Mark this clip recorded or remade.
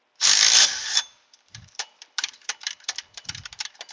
remade